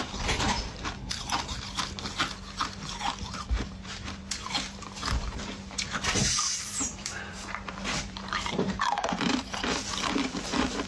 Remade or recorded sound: remade